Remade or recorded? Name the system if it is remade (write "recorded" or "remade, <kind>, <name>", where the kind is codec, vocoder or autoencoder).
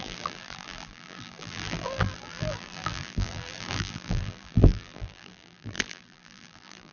remade, vocoder, BigVGAN v2